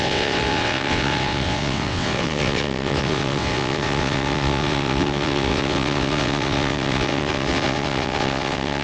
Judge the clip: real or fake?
fake